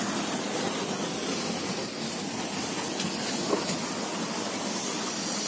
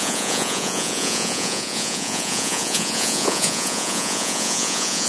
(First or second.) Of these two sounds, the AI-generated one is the second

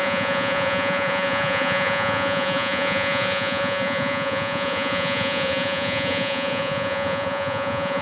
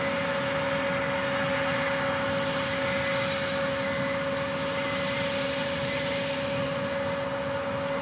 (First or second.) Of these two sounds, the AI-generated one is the first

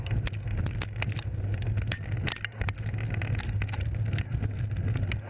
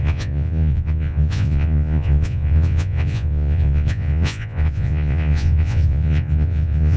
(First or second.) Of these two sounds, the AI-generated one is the second